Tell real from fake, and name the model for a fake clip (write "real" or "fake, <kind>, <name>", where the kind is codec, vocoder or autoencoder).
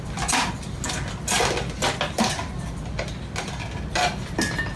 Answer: real